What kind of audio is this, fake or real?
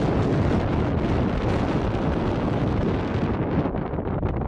real